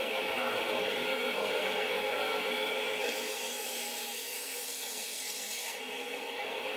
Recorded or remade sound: remade